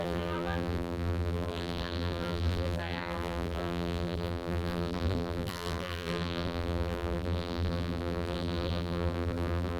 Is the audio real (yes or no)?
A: no